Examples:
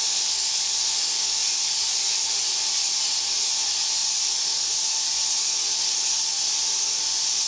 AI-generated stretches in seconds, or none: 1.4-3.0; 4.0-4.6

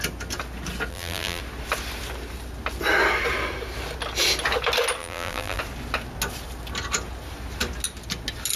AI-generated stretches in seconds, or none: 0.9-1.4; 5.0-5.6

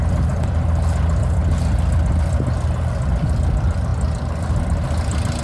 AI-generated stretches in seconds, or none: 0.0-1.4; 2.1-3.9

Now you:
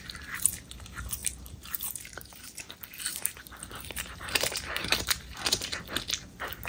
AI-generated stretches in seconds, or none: 1.2-2.6; 3.1-5.8